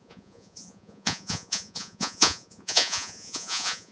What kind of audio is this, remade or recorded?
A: remade